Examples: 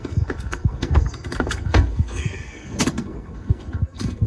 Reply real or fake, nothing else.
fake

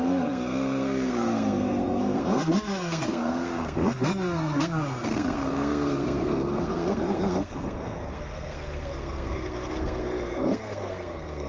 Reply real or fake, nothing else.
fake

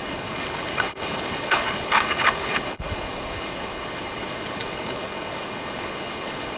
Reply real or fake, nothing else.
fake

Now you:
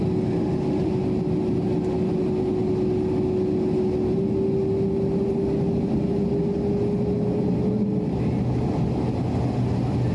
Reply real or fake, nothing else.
real